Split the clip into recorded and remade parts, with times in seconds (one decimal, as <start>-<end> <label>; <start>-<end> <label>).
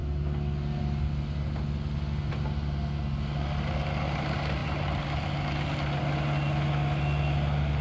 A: 0.0-7.8 recorded